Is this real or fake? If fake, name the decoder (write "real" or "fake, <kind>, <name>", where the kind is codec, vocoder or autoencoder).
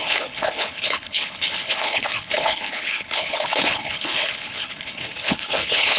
fake, codec, HILCodec